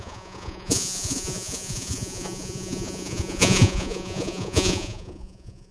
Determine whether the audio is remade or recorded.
remade